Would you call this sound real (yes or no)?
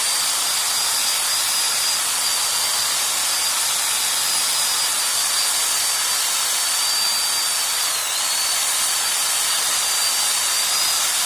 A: yes